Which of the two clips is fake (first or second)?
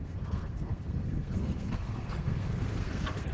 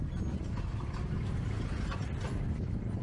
first